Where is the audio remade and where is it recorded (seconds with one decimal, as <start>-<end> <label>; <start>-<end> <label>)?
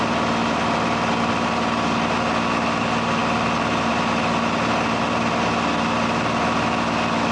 0.0-7.3 recorded